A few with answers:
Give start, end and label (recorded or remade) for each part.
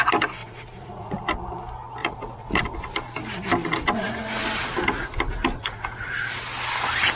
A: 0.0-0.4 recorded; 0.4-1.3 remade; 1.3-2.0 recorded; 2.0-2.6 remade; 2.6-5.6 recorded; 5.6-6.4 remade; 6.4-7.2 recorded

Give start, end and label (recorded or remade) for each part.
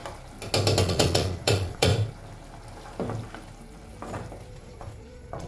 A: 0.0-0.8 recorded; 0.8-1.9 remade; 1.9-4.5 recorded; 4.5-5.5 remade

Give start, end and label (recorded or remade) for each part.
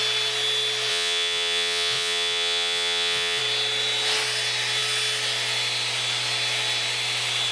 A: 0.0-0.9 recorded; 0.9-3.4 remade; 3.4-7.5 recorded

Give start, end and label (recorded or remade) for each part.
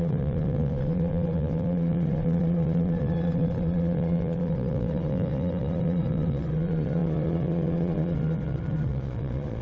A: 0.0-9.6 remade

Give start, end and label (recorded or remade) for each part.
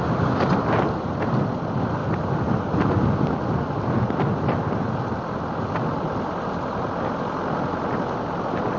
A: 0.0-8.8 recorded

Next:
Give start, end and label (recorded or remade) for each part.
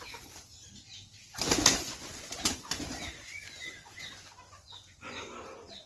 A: 0.0-1.7 recorded; 1.7-5.2 remade; 5.2-5.9 recorded